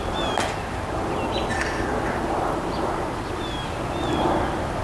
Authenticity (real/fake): real